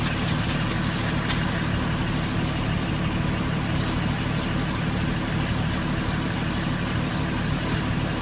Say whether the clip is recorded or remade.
recorded